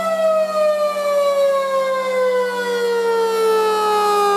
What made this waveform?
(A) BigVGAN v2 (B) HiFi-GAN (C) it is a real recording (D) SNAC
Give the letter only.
C